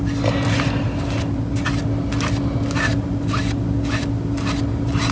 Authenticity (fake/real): real